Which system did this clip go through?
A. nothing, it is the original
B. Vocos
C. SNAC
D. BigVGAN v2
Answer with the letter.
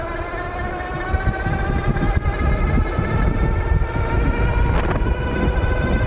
A